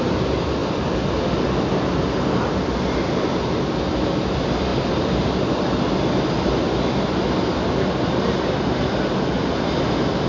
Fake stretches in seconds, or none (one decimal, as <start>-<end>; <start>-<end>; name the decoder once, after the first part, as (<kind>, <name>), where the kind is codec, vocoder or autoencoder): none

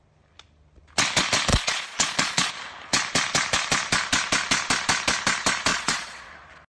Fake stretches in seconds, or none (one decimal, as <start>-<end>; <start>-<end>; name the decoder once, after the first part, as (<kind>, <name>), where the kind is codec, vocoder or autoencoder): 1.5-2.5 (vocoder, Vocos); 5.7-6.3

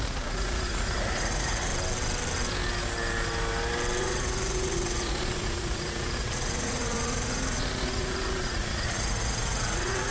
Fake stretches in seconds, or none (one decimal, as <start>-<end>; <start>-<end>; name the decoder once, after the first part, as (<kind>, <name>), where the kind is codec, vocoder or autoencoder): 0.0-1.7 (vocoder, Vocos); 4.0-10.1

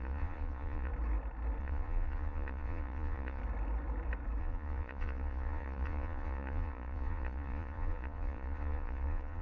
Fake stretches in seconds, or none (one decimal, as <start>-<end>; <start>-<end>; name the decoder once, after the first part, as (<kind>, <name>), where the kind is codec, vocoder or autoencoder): 0.0-0.9 (vocoder, Vocos); 1.6-3.4; 4.4-9.4

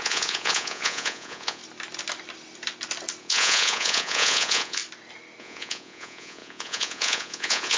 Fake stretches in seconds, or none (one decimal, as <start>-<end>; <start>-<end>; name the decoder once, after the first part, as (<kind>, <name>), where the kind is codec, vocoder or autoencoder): 0.0-1.6 (vocoder, Vocos); 3.2-4.8; 5.4-7.8

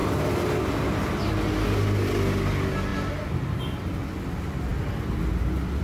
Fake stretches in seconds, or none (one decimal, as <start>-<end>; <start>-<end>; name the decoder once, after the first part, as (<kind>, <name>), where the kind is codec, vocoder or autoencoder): none